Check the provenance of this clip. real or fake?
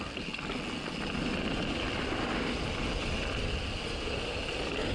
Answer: real